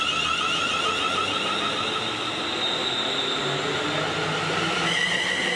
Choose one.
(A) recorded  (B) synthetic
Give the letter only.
A